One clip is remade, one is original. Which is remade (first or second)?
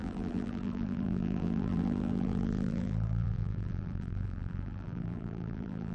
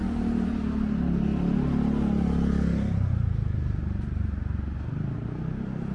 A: first